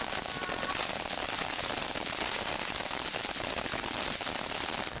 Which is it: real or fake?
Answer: real